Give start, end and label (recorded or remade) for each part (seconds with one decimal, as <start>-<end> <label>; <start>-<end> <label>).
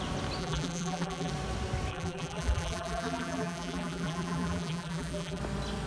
0.0-0.4 recorded; 0.4-1.3 remade; 1.3-1.9 recorded; 1.9-5.4 remade; 5.4-5.9 recorded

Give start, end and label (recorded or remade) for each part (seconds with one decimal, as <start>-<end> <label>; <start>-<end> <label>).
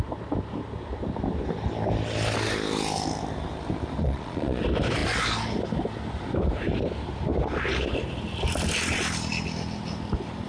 0.0-4.0 recorded; 4.0-4.6 remade; 4.6-10.5 recorded